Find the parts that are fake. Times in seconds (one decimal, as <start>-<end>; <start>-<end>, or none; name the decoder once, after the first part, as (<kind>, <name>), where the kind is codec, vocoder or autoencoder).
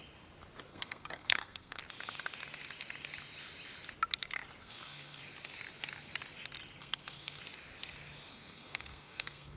0.7-1.8 (codec, SNAC); 4.6-5.2; 6.8-7.4; 8.3-9.6